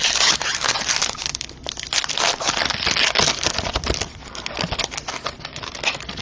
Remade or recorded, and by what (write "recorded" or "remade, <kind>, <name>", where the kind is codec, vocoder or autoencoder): recorded